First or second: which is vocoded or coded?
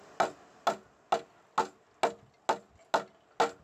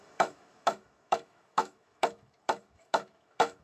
second